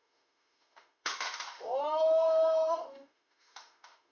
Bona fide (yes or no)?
no